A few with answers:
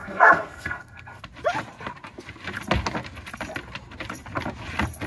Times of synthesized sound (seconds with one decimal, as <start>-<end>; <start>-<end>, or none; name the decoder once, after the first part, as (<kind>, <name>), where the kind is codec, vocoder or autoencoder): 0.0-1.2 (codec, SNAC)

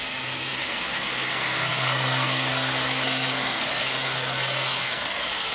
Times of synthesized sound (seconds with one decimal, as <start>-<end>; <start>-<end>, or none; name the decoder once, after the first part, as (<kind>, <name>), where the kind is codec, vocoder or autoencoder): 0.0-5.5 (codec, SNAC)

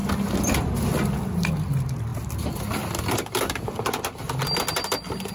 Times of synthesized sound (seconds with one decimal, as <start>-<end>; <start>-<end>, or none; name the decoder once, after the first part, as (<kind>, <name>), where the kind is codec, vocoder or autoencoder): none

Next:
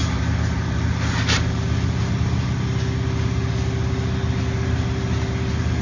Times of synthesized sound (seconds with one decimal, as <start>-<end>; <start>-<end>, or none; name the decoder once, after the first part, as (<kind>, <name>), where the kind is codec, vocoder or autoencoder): none

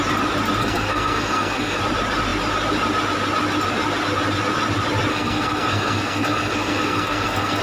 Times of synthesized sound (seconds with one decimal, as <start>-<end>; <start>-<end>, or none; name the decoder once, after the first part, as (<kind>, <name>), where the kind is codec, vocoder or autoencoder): 0.6-1.8 (codec, SNAC); 5.1-7.6

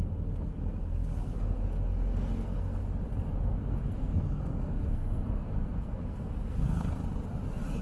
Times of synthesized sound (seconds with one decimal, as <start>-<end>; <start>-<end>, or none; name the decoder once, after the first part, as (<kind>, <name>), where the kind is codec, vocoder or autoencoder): 0.0-2.8 (codec, SNAC); 3.4-7.0